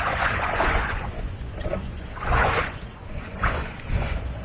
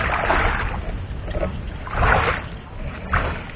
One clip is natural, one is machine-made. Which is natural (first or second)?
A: second